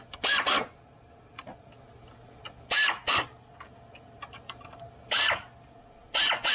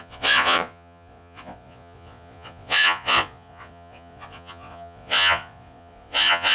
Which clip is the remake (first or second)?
second